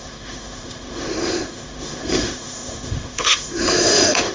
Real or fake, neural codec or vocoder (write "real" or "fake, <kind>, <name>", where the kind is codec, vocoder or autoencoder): fake, autoencoder, DAC-VAE